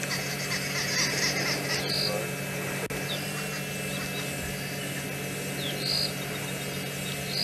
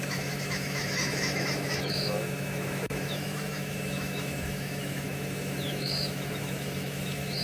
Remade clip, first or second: second